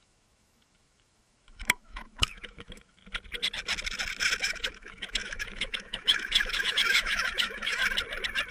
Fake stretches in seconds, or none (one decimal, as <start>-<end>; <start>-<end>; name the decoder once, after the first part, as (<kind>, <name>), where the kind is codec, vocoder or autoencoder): 0.0-3.0 (autoencoder, DAC-VAE); 4.4-7.8